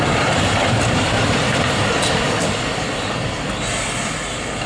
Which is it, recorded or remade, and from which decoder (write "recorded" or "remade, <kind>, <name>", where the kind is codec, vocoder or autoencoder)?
recorded